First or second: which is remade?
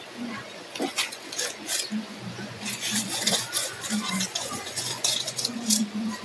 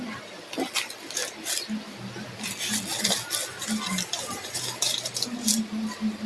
first